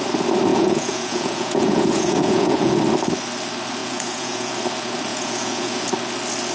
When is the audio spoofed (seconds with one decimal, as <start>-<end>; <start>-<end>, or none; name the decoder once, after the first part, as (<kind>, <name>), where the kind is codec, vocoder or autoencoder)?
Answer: 0.5-2.8 (vocoder, Vocos); 3.8-4.5; 5.1-5.9